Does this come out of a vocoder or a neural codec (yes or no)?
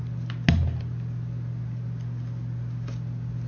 no